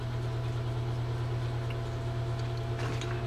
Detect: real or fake real